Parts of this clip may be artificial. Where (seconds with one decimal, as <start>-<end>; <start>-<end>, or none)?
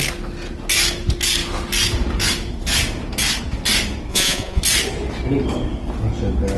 4.1-4.6